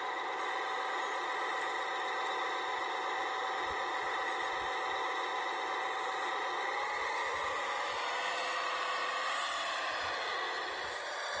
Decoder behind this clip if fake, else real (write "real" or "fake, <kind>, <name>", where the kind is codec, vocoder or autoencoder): real